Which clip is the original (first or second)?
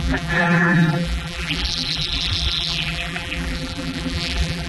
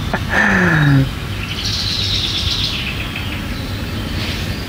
second